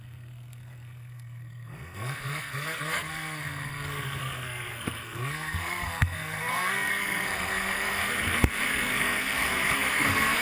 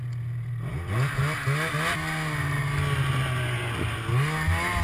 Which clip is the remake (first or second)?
first